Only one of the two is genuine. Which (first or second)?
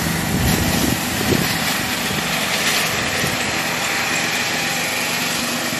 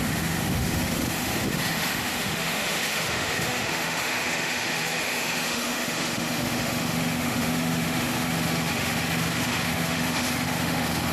first